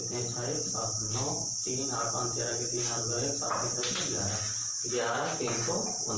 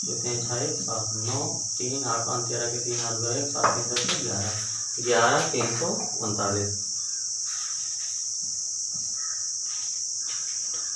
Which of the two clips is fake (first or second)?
first